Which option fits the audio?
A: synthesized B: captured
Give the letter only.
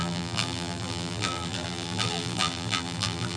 A